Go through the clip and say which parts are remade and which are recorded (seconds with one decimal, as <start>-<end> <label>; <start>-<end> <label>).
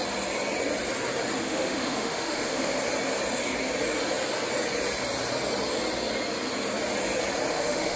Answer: 0.0-1.4 recorded; 1.4-2.7 remade; 2.7-7.5 recorded; 7.5-8.0 remade